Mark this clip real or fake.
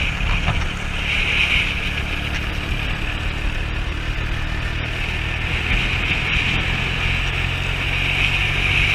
real